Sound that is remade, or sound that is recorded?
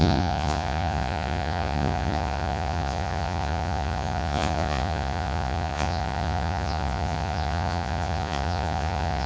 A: remade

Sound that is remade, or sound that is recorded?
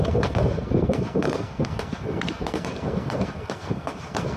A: remade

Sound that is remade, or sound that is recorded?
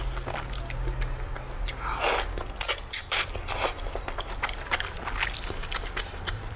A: recorded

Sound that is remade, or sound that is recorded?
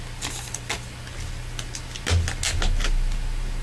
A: recorded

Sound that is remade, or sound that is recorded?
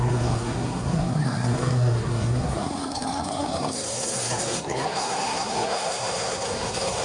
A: remade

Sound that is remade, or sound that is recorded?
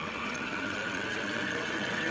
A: remade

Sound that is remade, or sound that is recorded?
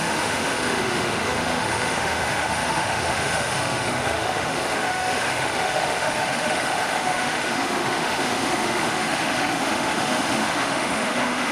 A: remade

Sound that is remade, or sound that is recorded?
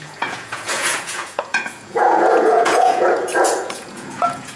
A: remade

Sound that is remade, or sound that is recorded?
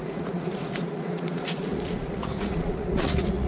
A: remade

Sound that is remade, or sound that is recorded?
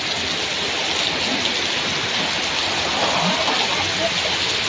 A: recorded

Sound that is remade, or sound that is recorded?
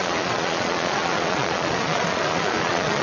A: remade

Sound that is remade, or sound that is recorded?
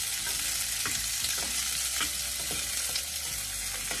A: recorded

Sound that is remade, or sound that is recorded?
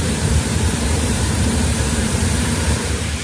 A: remade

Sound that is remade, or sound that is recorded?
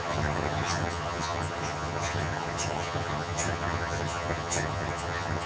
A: remade